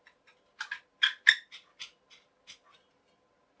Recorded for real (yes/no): yes